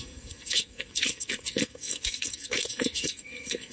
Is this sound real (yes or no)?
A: no